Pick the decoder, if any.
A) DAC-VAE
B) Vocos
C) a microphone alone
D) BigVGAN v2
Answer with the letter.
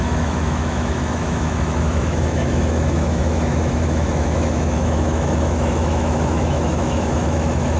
A